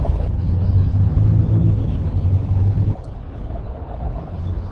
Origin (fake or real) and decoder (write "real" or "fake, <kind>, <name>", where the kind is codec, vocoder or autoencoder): fake, codec, HILCodec